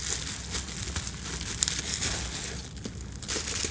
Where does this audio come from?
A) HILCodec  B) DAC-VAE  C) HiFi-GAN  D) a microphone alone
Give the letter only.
D